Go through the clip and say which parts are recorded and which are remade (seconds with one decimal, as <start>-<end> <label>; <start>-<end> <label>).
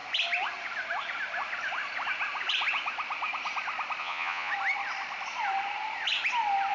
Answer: 0.0-4.0 recorded; 4.0-4.5 remade; 4.5-6.7 recorded